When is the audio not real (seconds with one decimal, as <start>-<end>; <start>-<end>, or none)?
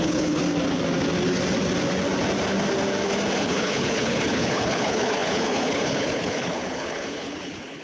0.0-0.4; 3.4-7.8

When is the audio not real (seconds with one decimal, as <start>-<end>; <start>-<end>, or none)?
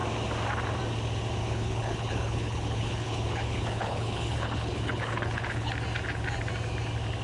1.4-5.7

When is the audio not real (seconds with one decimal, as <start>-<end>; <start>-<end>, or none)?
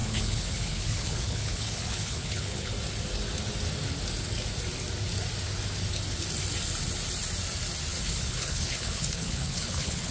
0.0-2.7; 7.9-10.1